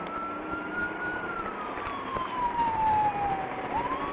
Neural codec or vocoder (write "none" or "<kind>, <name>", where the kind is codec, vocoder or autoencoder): vocoder, BigVGAN v2